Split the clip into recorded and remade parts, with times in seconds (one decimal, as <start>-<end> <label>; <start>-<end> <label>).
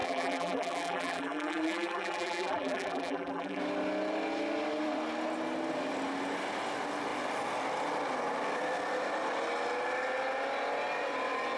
0.0-3.6 remade; 3.6-11.6 recorded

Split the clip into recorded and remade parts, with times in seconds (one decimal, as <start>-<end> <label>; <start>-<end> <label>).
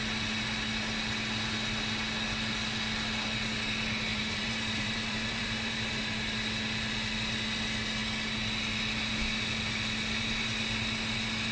0.0-4.1 recorded; 4.1-6.0 remade; 6.0-11.5 recorded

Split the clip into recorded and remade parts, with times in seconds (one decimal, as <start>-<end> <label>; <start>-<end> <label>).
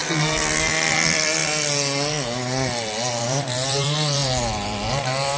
0.0-0.9 recorded; 0.9-1.4 remade; 1.4-3.2 recorded; 3.2-5.4 remade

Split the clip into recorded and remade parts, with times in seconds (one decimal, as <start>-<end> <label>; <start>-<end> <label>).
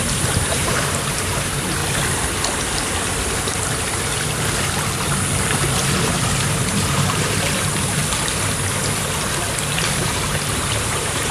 0.0-1.8 remade; 1.8-5.7 recorded; 5.7-8.0 remade; 8.0-9.9 recorded; 9.9-11.3 remade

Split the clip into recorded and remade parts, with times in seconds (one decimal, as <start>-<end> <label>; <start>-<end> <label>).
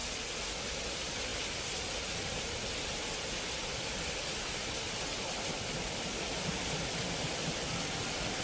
0.0-1.3 remade; 1.3-5.2 recorded; 5.2-8.4 remade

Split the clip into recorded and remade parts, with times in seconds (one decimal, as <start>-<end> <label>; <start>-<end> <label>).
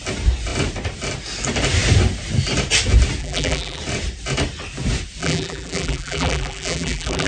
0.0-3.2 recorded; 3.2-3.8 remade; 3.8-5.2 recorded; 5.2-7.3 remade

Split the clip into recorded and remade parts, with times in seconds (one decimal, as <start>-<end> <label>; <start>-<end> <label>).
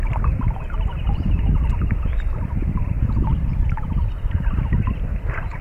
0.0-1.6 recorded; 1.6-2.2 remade; 2.2-2.6 recorded; 2.6-3.2 remade; 3.2-5.6 recorded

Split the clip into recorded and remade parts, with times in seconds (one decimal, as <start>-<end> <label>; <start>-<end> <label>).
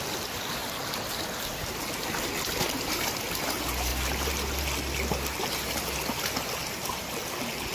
0.0-7.7 recorded